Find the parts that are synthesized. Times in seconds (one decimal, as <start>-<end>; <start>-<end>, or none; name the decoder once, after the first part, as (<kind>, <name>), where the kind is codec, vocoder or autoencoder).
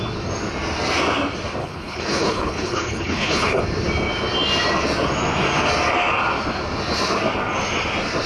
1.6-3.6 (codec, HILCodec)